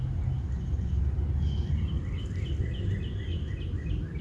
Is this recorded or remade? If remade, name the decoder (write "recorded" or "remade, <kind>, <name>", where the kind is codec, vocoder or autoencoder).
recorded